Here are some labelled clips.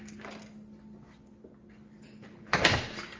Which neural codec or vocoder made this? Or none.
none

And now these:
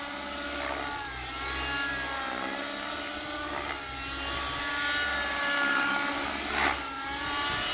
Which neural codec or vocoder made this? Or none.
none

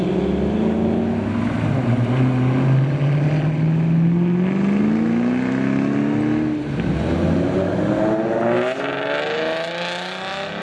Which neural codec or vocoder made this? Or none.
none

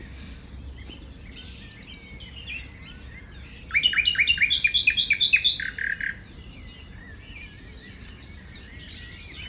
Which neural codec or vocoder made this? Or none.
none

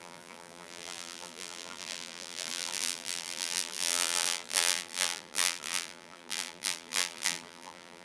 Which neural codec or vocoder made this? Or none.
vocoder, BigVGAN v2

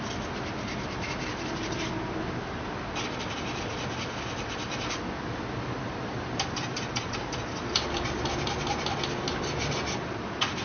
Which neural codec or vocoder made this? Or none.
none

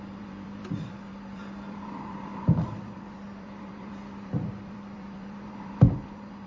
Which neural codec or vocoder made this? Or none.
vocoder, BigVGAN v2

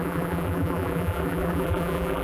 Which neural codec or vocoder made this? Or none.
vocoder, BigVGAN v2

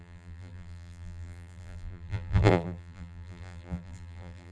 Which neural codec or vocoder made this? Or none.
vocoder, BigVGAN v2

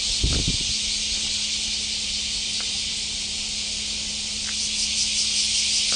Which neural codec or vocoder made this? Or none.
none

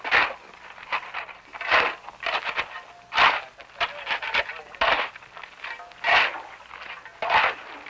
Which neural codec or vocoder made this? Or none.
none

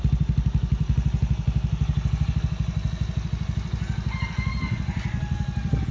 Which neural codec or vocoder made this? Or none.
none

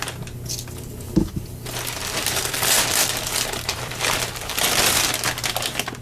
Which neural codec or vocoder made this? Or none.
none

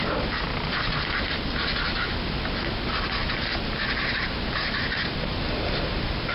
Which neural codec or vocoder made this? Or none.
none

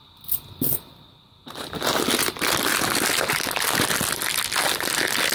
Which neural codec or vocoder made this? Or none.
none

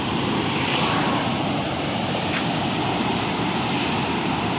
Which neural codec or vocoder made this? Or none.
vocoder, BigVGAN v2